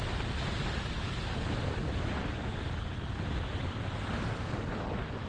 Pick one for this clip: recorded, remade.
recorded